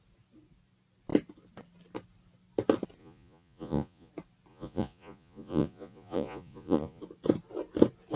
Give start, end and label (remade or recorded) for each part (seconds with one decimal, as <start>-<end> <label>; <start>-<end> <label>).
0.0-3.0 recorded; 3.0-4.1 remade; 4.1-4.5 recorded; 4.5-7.0 remade; 7.0-8.2 recorded